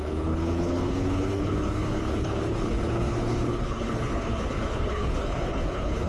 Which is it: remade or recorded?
remade